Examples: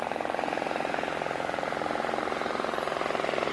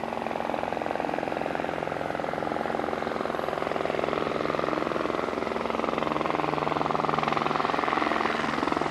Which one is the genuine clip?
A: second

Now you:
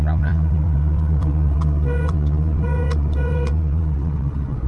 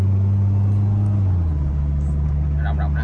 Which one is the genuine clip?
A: second